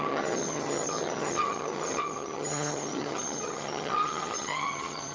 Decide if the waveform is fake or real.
fake